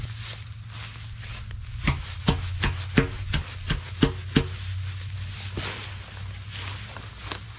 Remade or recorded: recorded